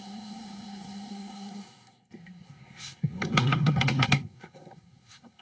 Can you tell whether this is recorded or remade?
remade